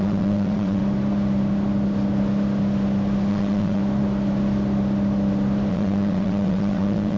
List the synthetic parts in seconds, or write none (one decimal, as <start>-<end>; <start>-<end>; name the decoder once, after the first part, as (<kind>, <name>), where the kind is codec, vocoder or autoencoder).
0.0-0.8 (vocoder, WaveNeXt); 3.3-3.8; 5.7-7.2